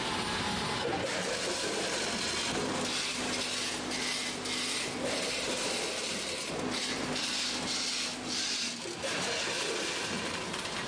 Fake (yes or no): no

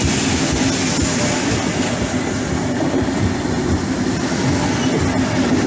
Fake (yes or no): no